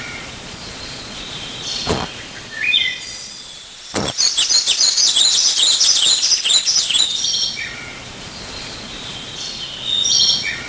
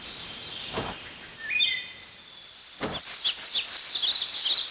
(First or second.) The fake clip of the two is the first